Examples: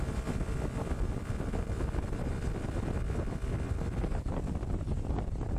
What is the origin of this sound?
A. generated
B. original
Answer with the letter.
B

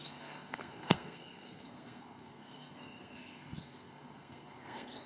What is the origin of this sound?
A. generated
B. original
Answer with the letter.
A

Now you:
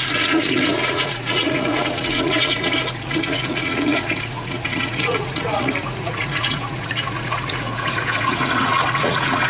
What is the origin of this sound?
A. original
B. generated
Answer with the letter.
B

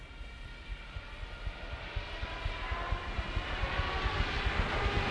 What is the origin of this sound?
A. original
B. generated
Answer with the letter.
A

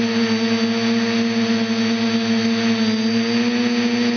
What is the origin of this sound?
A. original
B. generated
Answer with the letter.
A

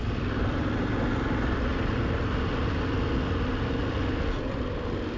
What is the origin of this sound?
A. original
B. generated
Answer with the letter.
A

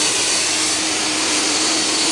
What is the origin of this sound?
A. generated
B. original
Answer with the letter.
B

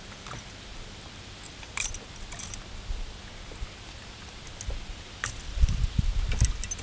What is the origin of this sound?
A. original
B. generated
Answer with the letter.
A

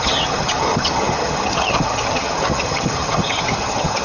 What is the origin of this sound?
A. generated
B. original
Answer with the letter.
A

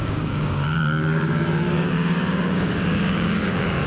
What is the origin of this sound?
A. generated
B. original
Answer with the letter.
A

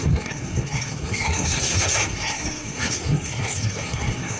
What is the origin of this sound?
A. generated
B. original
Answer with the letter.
A